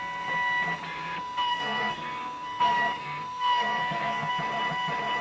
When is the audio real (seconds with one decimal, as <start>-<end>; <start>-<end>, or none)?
0.0-1.5; 2.6-3.0; 4.3-5.2